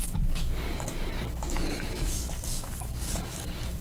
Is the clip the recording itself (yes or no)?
no